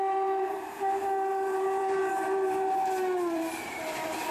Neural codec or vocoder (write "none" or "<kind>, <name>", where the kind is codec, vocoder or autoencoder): vocoder, BigVGAN v2